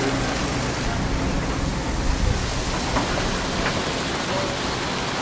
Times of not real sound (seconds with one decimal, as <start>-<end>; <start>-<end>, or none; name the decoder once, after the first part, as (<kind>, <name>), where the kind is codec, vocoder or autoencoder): none